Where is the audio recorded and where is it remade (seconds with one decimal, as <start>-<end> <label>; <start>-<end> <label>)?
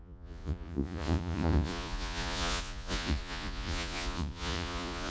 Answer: 0.0-5.1 remade